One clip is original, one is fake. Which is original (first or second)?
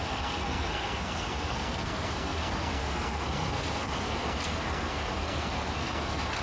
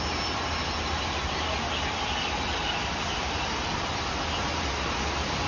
second